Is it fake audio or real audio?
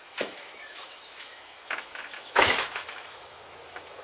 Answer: fake